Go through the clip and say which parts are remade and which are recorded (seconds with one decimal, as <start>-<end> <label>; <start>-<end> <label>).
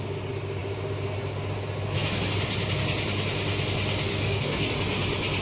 0.0-4.1 recorded; 4.1-4.7 remade; 4.7-5.4 recorded